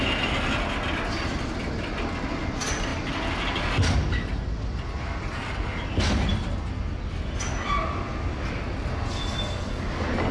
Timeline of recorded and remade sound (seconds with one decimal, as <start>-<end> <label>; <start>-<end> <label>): 0.0-10.3 recorded